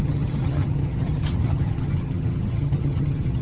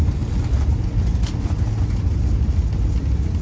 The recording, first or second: second